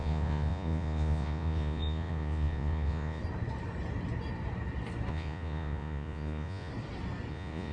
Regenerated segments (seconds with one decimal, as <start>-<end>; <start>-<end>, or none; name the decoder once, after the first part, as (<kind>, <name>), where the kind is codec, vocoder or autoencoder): 0.0-3.2 (vocoder, Vocos); 5.1-6.7; 7.3-7.7